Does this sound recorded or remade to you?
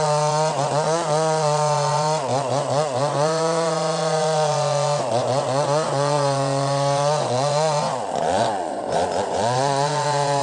remade